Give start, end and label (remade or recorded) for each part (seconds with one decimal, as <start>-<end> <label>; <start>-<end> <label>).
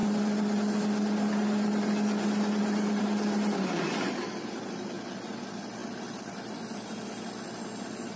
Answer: 0.0-8.2 recorded